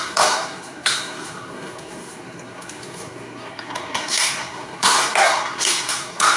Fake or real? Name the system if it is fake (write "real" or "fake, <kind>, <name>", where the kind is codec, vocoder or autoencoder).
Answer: fake, codec, SNAC